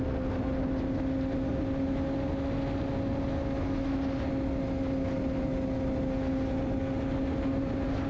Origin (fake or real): real